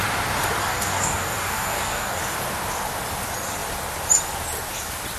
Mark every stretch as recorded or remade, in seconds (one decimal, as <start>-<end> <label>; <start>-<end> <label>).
0.0-0.6 recorded; 0.6-2.2 remade; 2.2-5.2 recorded